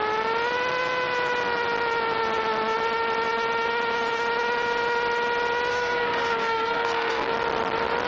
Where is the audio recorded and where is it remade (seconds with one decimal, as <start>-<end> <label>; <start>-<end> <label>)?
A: 0.0-5.7 recorded; 5.7-7.3 remade; 7.3-8.1 recorded